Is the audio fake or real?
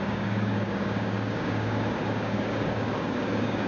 fake